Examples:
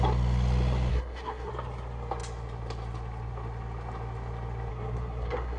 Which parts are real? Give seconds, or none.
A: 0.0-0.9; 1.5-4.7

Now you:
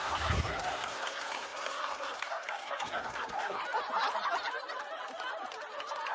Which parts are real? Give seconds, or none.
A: 3.6-6.1

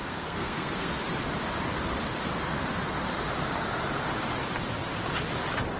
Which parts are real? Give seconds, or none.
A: 1.0-5.8

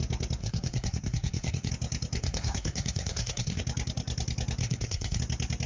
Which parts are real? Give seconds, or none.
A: 0.0-0.4; 1.7-2.2; 3.6-4.6; 5.2-5.7